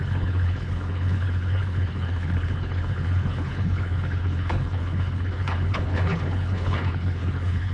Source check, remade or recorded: remade